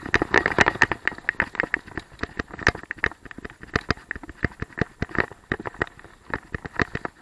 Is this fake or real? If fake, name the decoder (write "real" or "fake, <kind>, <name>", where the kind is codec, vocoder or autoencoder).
real